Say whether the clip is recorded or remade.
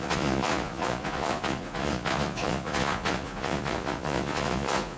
remade